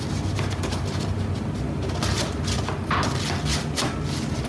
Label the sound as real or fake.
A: real